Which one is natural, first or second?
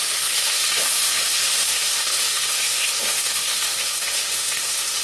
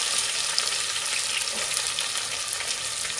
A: second